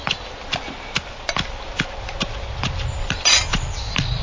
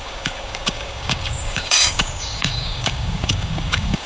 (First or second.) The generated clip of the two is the second